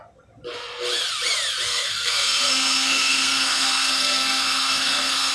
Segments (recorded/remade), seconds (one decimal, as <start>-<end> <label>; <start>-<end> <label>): 0.0-1.7 recorded; 1.7-5.3 remade